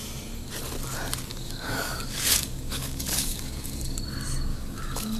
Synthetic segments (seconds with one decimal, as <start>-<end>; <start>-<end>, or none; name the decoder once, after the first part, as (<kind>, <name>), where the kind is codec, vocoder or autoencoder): 1.3-4.0 (codec, DAC); 4.5-5.2